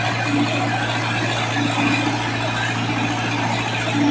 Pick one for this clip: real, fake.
real